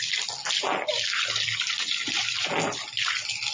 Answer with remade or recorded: recorded